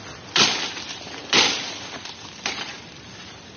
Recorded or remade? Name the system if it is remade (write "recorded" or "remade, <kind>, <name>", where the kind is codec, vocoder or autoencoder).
remade, vocoder, BigVGAN v2